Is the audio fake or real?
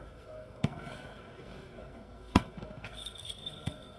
fake